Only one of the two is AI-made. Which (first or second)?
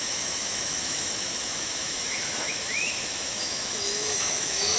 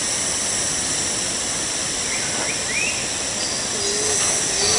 first